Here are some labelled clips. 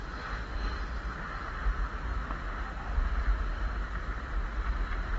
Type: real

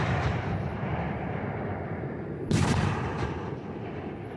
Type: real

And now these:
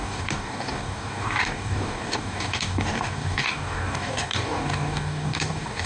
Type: fake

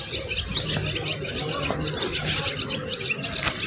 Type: real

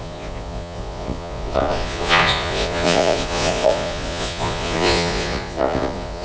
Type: fake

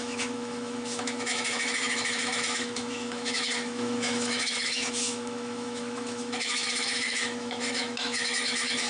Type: fake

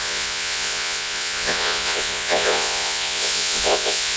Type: fake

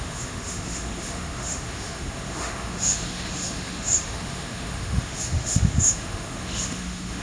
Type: fake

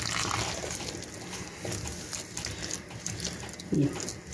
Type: real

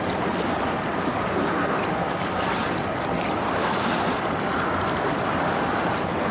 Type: real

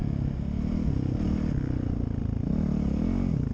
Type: real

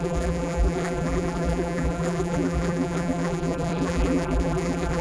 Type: fake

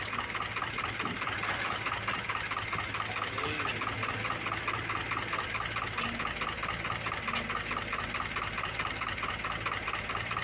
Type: real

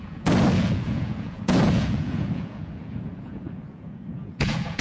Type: fake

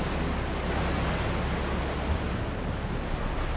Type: real